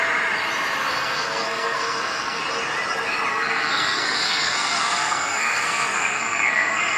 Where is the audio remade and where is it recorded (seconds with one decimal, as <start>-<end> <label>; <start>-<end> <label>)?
0.0-0.9 recorded; 0.9-2.4 remade; 2.4-3.3 recorded; 3.3-7.0 remade